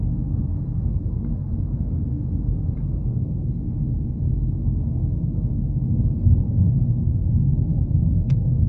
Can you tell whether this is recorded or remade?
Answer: remade